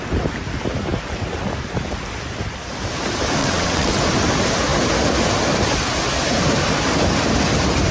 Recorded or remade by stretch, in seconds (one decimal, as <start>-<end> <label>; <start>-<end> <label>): 0.0-3.4 recorded; 3.4-4.0 remade; 4.0-7.9 recorded